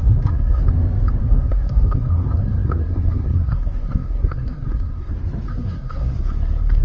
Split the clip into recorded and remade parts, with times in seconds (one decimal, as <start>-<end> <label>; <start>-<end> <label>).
0.0-0.6 remade; 0.6-1.2 recorded; 1.2-5.1 remade; 5.1-5.5 recorded; 5.5-6.8 remade